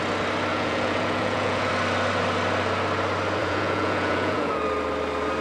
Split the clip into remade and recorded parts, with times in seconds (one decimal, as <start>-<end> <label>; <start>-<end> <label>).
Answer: 0.0-0.5 recorded; 0.5-1.7 remade; 1.7-3.4 recorded; 3.4-4.6 remade; 4.6-5.4 recorded